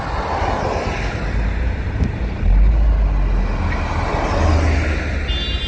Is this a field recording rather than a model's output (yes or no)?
yes